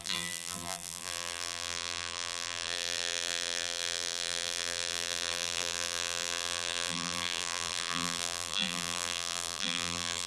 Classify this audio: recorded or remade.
remade